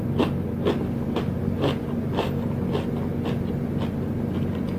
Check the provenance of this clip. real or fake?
real